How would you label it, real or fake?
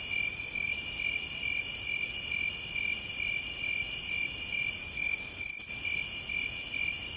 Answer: real